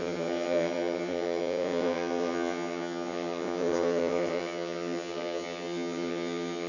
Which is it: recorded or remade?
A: remade